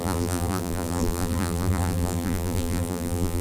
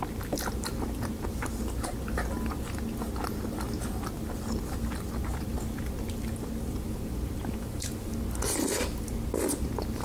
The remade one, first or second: first